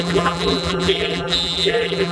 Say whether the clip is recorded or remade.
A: remade